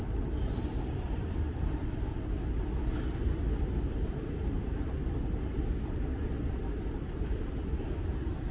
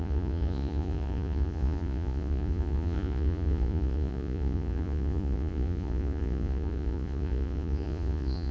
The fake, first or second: second